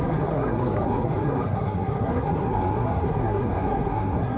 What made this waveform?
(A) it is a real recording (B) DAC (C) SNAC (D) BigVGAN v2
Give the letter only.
C